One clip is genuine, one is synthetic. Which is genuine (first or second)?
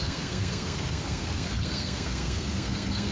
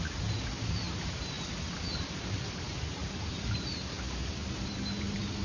second